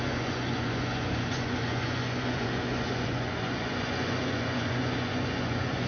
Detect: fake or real fake